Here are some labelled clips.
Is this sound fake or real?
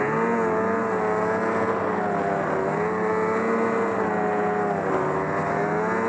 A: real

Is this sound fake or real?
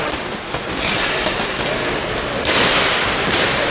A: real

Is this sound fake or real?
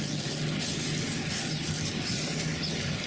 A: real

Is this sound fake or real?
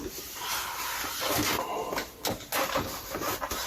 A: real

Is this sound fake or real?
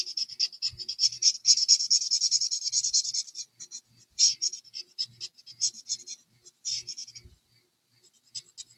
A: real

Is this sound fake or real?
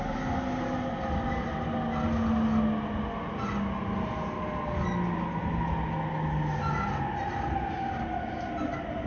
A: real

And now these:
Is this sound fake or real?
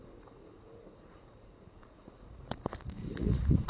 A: fake